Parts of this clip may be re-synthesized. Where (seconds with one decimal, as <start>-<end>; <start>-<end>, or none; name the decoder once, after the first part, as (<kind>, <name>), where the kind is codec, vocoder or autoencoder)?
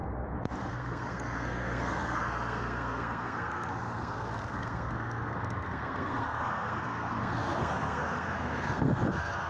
0.7-9.5 (codec, SNAC)